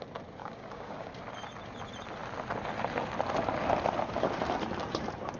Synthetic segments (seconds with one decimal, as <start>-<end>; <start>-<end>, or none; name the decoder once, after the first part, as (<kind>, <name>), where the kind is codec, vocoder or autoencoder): 0.4-1.1 (codec, DAC)

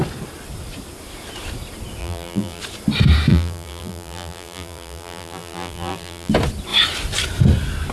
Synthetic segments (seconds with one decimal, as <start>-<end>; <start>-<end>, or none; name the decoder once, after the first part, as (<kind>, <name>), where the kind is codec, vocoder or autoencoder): 2.0-2.6 (vocoder, BigVGAN v2); 3.3-6.3

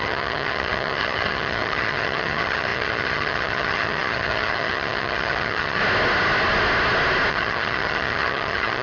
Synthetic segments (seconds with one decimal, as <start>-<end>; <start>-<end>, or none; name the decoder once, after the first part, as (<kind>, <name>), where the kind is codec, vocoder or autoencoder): 0.0-5.8 (vocoder, HiFi-GAN); 7.3-8.8